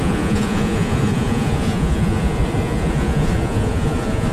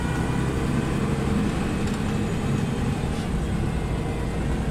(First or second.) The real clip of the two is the second